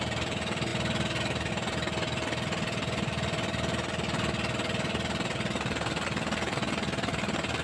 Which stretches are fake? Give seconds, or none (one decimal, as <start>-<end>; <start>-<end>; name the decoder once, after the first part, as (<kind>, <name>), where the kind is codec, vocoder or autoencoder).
0.0-7.6 (vocoder, BigVGAN v2)